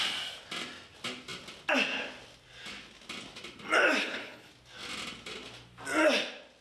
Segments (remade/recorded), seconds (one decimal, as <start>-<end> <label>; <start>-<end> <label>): 0.0-4.0 recorded; 4.0-4.5 remade; 4.5-6.6 recorded